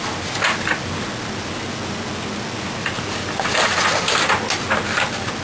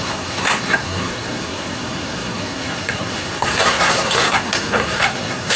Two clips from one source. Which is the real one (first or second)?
first